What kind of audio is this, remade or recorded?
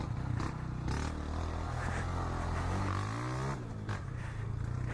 recorded